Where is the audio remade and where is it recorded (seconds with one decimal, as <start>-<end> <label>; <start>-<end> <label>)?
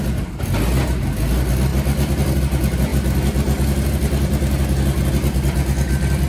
0.0-6.3 recorded